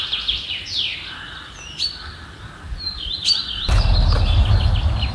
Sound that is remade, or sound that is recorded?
recorded